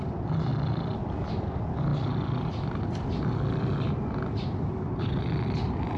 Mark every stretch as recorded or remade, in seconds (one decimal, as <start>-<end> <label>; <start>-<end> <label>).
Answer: 0.0-6.0 recorded